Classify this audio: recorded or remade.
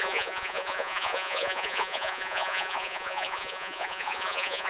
remade